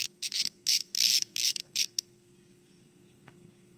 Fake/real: fake